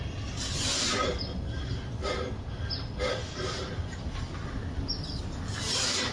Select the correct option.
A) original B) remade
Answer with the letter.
A